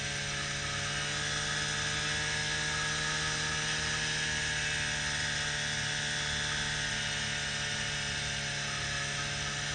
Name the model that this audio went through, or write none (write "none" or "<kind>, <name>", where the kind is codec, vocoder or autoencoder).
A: none